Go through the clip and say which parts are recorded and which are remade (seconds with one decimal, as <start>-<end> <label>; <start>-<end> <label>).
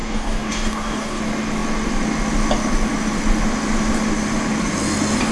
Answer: 0.0-1.2 remade; 1.2-5.3 recorded